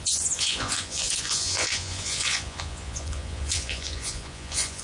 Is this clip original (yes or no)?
no